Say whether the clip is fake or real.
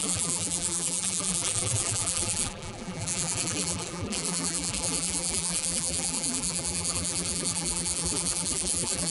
fake